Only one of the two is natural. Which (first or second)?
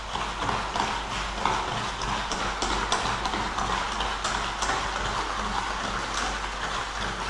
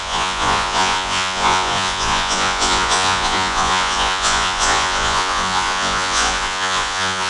first